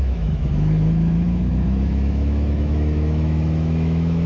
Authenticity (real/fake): fake